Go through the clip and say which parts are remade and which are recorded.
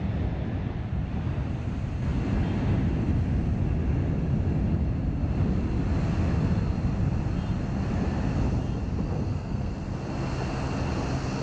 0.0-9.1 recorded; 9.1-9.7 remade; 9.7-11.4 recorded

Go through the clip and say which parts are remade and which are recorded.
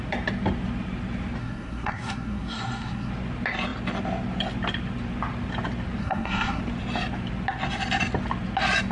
0.0-1.4 recorded; 1.4-3.1 remade; 3.1-6.0 recorded; 6.0-6.6 remade; 6.6-8.9 recorded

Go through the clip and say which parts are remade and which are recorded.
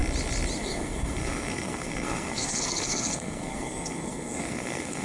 0.0-0.6 recorded; 0.6-5.0 remade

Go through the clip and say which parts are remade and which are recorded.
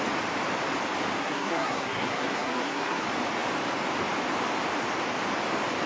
0.0-1.2 recorded; 1.2-3.0 remade; 3.0-5.9 recorded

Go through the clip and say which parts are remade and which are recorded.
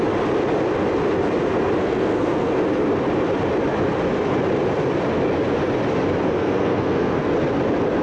0.0-1.8 recorded; 1.8-2.6 remade; 2.6-6.4 recorded; 6.4-7.3 remade; 7.3-8.0 recorded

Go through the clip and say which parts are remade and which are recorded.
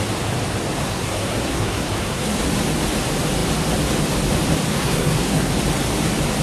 0.0-0.8 recorded; 0.8-2.4 remade; 2.4-4.7 recorded; 4.7-5.5 remade; 5.5-6.4 recorded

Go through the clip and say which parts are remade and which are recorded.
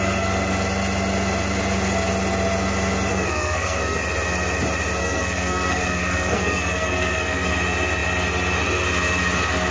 0.0-3.1 recorded; 3.1-4.0 remade; 4.0-5.0 recorded; 5.0-7.5 remade; 7.5-9.7 recorded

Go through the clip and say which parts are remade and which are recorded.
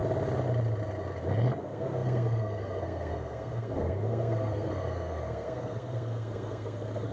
0.0-1.6 recorded; 1.6-7.1 remade